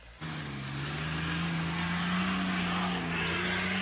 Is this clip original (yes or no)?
yes